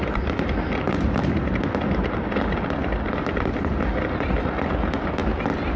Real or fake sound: real